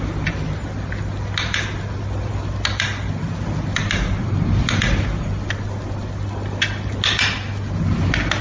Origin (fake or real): real